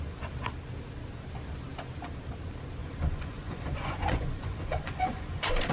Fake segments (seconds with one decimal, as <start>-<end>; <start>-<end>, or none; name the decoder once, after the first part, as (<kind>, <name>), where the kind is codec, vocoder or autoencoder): 2.8-5.7 (vocoder, Vocos)